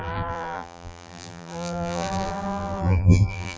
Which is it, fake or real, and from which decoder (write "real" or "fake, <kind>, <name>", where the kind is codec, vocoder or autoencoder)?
fake, vocoder, BigVGAN v2